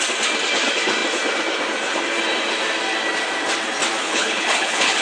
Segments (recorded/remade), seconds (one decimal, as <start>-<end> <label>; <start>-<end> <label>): 0.0-4.0 recorded; 4.0-5.0 remade